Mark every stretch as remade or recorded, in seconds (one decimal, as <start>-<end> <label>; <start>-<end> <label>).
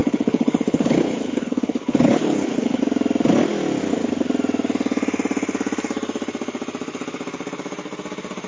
0.0-2.8 remade; 2.8-8.5 recorded